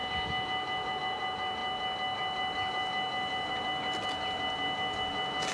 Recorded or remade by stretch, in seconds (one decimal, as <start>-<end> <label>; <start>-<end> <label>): 0.0-5.5 recorded

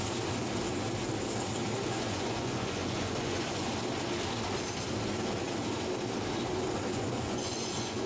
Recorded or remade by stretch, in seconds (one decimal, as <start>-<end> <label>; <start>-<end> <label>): 0.0-1.9 recorded; 1.9-3.7 remade; 3.7-6.9 recorded; 6.9-8.1 remade

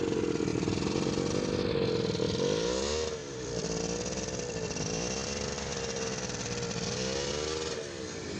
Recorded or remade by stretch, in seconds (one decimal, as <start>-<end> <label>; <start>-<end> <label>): 0.0-3.2 recorded; 3.2-7.3 remade; 7.3-8.4 recorded

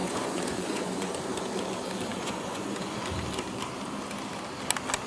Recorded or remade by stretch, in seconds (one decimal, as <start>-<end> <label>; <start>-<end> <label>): 0.0-1.2 remade; 1.2-2.1 recorded; 2.1-3.0 remade; 3.0-5.1 recorded

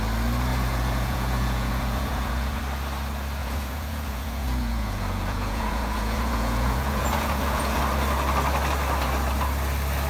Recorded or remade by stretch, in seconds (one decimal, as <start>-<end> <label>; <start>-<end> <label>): 0.0-0.5 recorded; 0.5-2.6 remade; 2.6-3.4 recorded; 3.4-7.8 remade; 7.8-10.1 recorded